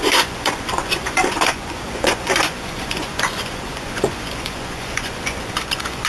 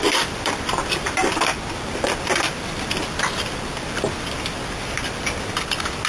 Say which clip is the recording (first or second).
second